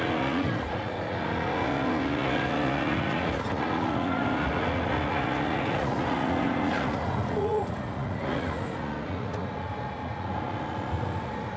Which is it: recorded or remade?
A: remade